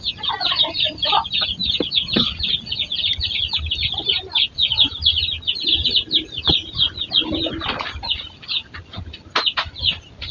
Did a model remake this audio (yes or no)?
no